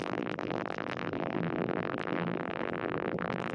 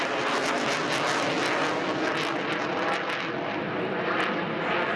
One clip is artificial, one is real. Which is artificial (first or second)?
first